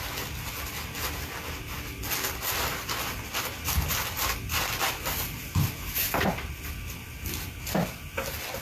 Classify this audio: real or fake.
real